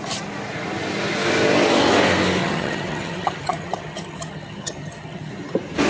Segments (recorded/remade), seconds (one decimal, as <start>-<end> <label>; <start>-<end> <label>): 0.0-2.4 recorded; 2.4-5.3 remade; 5.3-5.9 recorded